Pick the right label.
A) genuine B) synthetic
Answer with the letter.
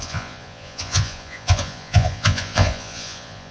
B